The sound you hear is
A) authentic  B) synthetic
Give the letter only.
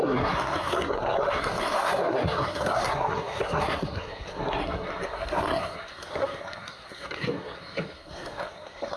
B